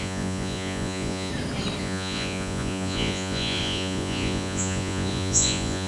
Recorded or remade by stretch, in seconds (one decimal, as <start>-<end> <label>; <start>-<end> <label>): 0.0-1.3 remade; 1.3-1.8 recorded; 1.8-5.9 remade